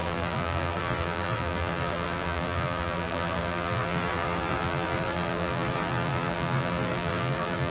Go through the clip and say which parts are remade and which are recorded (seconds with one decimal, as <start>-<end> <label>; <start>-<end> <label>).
0.0-7.7 remade